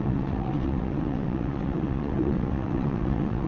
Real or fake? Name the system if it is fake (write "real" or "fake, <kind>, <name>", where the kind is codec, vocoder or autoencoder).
fake, vocoder, WaveNeXt